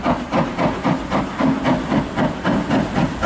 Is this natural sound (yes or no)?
yes